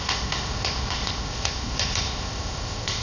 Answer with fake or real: fake